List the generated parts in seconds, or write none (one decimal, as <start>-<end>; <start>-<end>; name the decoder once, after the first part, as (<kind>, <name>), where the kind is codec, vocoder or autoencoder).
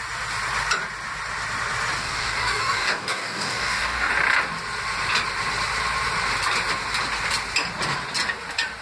2.0-4.1 (codec, DAC)